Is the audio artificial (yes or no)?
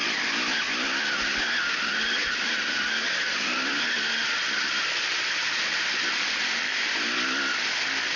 no